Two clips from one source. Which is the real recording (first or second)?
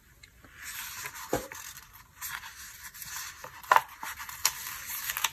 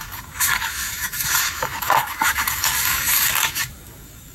first